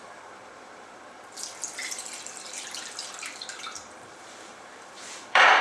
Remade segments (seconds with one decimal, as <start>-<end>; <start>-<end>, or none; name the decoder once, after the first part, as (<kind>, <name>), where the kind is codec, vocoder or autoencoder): 1.8-5.6 (vocoder, BigVGAN v2)